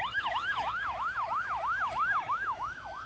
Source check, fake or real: fake